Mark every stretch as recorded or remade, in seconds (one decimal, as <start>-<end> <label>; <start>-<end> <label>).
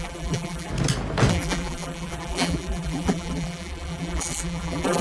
0.0-0.7 remade; 0.7-1.3 recorded; 1.3-5.0 remade